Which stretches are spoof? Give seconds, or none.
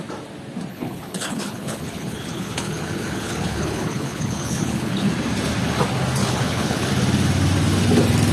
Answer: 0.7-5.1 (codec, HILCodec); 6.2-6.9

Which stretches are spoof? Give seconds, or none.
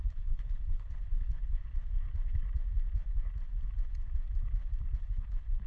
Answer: 0.0-1.6 (codec, HILCodec); 5.0-5.7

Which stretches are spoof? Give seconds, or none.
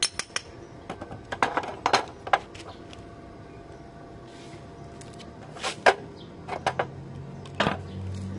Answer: none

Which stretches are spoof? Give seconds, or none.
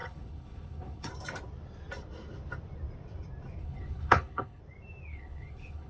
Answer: 0.0-1.1 (codec, HILCodec); 3.6-4.6; 5.1-5.9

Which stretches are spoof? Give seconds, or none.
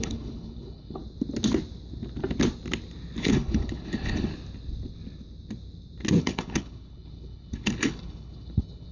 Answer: 0.0-1.0 (codec, HILCodec); 3.2-4.3; 6.2-8.9